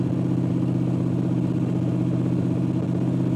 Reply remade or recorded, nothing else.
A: recorded